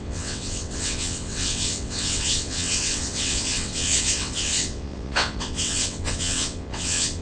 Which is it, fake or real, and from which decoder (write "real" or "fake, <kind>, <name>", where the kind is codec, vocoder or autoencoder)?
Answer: fake, vocoder, WaveNeXt